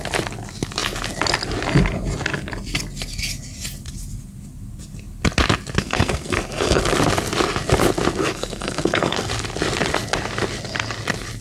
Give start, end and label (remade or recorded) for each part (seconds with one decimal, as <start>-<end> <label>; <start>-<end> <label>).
0.0-5.8 recorded; 5.8-6.8 remade; 6.8-8.2 recorded; 8.2-9.3 remade; 9.3-11.4 recorded